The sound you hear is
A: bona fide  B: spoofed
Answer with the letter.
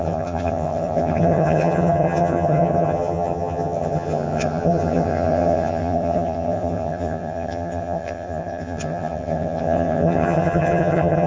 B